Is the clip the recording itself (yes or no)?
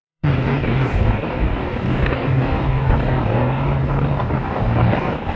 no